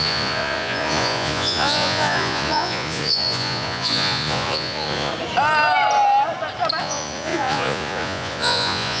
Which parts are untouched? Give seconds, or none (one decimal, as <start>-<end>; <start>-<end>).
5.1-6.8